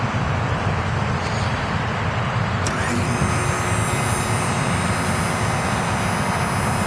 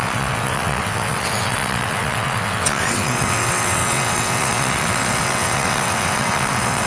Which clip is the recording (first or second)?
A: first